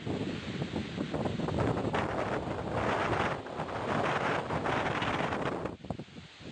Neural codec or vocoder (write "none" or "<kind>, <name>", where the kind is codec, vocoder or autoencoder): none